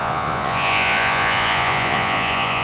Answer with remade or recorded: remade